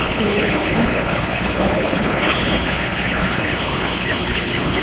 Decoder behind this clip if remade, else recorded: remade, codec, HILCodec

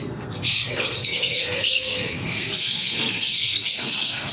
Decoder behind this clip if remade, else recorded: remade, codec, SNAC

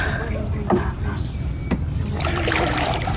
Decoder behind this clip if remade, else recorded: recorded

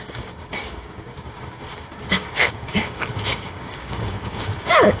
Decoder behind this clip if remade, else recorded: remade, codec, DAC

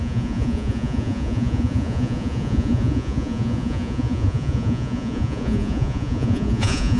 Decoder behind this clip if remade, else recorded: remade, vocoder, Vocos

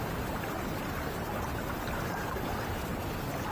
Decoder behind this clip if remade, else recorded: recorded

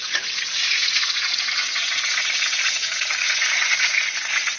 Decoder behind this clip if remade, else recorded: remade, vocoder, Vocos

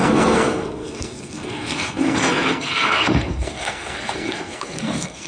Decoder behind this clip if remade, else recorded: remade, codec, SNAC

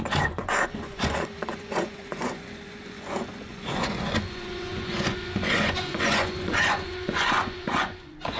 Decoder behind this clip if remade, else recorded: remade, vocoder, Vocos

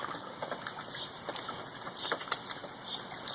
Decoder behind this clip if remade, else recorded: recorded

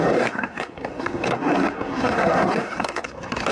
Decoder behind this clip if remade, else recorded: remade, codec, SNAC